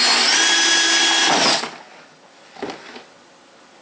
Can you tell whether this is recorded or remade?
recorded